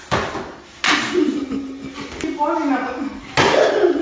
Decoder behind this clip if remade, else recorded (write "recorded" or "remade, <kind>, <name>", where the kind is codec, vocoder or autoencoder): recorded